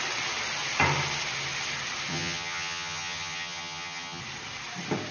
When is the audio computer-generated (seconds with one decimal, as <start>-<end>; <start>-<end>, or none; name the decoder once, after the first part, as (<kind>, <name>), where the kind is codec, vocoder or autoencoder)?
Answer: 2.1-4.2 (vocoder, HiFi-GAN)